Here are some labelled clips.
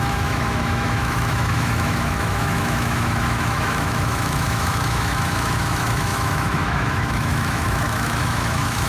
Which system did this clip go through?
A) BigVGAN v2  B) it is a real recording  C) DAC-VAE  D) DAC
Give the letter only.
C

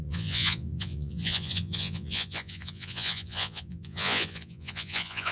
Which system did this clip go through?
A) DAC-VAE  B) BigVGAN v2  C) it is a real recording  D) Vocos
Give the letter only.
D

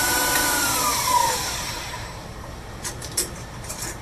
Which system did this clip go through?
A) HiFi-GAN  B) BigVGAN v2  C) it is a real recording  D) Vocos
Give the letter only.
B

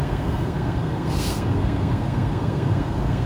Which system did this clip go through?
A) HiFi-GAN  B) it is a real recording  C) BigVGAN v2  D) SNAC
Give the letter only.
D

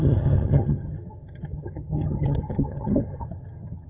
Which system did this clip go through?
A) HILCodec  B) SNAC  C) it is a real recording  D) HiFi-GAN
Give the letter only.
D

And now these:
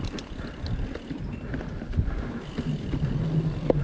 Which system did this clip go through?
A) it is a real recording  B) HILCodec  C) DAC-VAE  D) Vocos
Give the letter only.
A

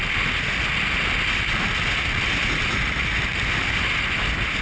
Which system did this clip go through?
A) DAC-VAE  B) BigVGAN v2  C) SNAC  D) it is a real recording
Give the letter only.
D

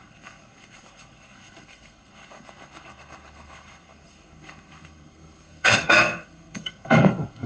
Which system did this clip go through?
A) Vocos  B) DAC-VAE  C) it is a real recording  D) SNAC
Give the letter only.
D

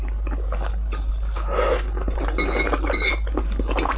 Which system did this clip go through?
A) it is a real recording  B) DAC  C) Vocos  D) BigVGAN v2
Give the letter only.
A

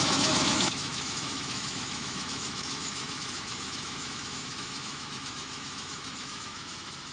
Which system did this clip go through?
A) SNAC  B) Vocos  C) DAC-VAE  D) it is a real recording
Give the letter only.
C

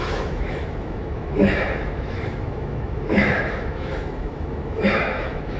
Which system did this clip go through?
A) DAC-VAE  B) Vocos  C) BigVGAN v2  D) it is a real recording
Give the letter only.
A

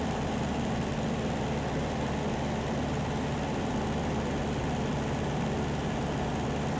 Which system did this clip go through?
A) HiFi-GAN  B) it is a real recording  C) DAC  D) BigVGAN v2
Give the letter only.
B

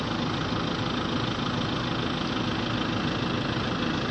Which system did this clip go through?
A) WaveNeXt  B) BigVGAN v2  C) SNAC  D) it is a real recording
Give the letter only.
D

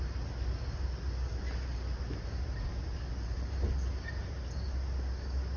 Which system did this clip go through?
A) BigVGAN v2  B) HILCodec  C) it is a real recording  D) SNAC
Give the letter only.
C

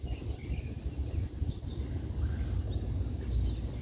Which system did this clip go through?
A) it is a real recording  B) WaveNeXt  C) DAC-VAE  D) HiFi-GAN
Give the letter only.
A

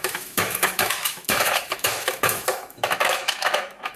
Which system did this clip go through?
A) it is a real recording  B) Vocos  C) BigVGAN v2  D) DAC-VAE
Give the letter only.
D